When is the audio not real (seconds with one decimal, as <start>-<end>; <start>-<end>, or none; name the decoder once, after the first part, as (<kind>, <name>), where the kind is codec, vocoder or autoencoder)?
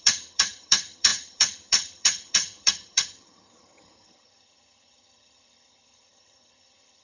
0.0-7.0 (vocoder, HiFi-GAN)